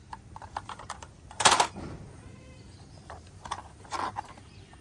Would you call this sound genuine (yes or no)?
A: no